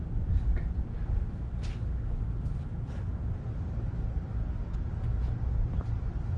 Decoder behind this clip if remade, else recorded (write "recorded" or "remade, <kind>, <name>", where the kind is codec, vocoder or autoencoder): recorded